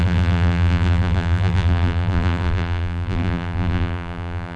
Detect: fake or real fake